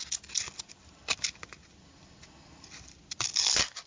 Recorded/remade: recorded